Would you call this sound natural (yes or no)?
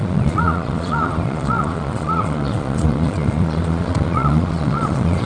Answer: no